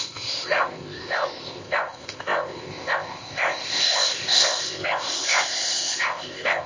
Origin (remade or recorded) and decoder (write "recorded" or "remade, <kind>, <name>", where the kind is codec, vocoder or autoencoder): remade, codec, ZipCodec